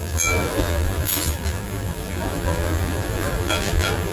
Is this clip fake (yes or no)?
yes